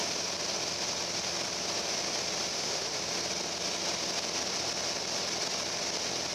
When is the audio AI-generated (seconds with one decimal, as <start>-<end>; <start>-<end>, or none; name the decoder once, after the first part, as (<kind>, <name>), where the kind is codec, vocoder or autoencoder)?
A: 2.5-3.0 (autoencoder, DAC-VAE)

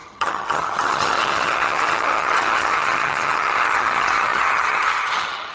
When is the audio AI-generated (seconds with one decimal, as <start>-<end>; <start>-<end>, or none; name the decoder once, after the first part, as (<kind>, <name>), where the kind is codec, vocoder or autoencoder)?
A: 0.0-5.5 (vocoder, HiFi-GAN)

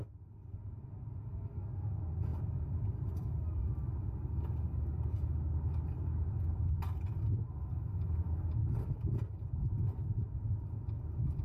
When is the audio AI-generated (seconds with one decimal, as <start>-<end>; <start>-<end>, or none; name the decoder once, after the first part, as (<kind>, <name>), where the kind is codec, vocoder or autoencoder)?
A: none

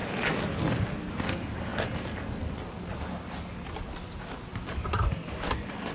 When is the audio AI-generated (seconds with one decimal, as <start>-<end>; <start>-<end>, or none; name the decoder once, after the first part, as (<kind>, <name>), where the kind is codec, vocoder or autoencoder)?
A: none